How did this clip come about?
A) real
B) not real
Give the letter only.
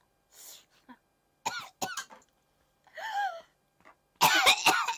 A